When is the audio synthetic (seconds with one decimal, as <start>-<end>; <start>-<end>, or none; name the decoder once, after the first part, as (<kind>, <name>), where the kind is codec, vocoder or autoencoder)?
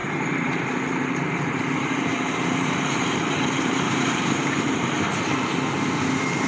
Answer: 0.0-1.3 (vocoder, BigVGAN v2); 2.1-4.9